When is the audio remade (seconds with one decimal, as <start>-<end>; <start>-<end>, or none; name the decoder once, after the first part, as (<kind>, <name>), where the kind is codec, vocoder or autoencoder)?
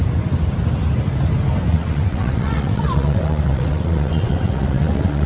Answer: 1.7-5.3 (vocoder, WaveNeXt)